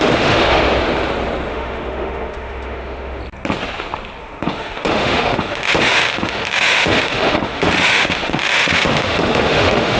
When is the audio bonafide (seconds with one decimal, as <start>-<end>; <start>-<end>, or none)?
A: 0.6-1.5; 3.2-4.2